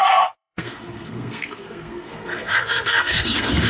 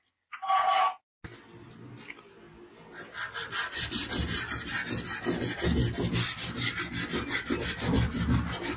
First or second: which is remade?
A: first